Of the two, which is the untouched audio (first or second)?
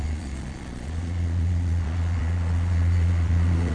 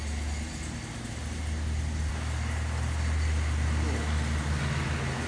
second